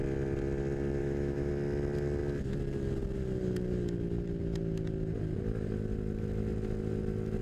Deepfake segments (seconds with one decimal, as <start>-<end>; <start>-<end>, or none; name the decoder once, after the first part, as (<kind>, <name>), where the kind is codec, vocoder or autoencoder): 1.0-1.5 (autoencoder, DAC-VAE)